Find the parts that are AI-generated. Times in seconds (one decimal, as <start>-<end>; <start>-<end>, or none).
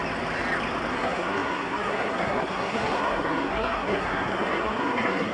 0.9-5.3